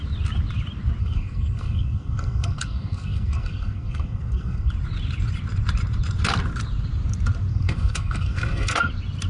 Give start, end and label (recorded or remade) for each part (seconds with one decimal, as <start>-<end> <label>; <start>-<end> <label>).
0.0-1.0 recorded; 1.0-4.7 remade; 4.7-7.5 recorded; 7.5-8.9 remade; 8.9-9.3 recorded